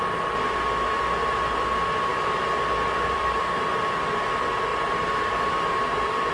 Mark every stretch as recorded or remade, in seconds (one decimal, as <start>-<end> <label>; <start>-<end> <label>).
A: 0.0-2.1 recorded; 2.1-3.5 remade; 3.5-4.7 recorded; 4.7-6.3 remade